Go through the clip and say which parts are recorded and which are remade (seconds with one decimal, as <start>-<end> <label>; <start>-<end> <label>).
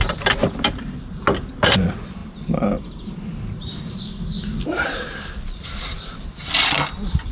0.0-7.3 recorded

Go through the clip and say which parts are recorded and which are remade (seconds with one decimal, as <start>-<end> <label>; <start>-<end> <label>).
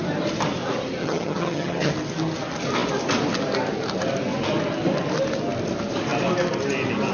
0.0-1.0 recorded; 1.0-1.9 remade; 1.9-7.1 recorded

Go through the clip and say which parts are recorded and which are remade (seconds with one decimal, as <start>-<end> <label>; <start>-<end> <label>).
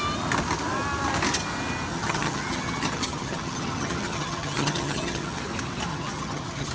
0.0-1.9 recorded; 1.9-5.4 remade; 5.4-5.9 recorded; 5.9-6.7 remade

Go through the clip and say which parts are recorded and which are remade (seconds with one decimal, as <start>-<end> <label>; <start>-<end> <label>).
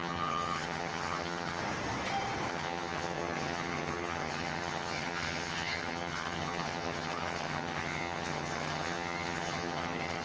0.0-1.6 remade; 1.6-2.5 recorded; 2.5-10.2 remade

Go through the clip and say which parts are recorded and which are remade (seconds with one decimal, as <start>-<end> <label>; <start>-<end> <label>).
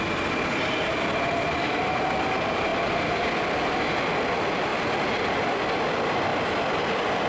0.0-7.3 recorded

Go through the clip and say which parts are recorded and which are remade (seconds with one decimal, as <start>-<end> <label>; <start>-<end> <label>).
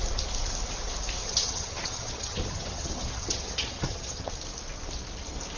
0.0-1.2 recorded; 1.2-4.3 remade; 4.3-5.6 recorded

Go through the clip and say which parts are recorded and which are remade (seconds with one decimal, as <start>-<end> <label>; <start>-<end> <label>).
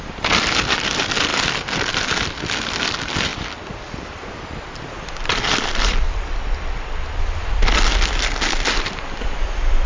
0.0-9.9 recorded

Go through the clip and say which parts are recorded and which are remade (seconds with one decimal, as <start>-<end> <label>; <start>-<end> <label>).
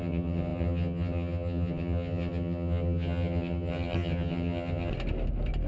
0.0-4.9 remade; 4.9-5.7 recorded